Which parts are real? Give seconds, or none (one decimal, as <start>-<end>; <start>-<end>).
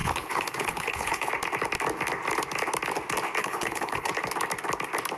1.3-3.4; 4.1-5.2